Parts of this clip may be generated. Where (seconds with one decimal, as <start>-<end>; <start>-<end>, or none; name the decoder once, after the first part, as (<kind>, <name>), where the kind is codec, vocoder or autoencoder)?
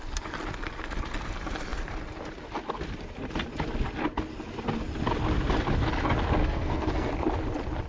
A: 6.4-7.1 (codec, SNAC)